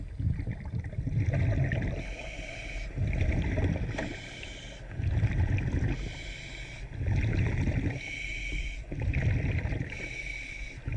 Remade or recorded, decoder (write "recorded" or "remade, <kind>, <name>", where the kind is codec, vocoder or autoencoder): recorded